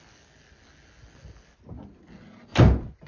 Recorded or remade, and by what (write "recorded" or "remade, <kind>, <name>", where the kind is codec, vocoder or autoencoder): recorded